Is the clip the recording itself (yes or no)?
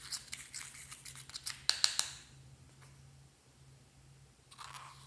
yes